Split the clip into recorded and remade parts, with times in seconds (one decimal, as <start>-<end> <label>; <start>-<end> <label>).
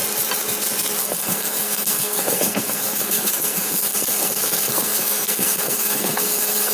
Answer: 0.0-1.0 recorded; 1.0-6.7 remade